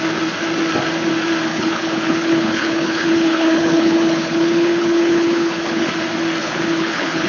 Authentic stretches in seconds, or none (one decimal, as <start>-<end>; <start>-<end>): 0.0-1.5; 5.9-6.4